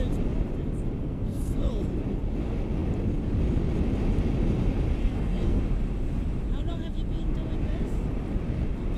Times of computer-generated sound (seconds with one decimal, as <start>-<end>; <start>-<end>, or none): 1.0-1.7; 5.0-5.6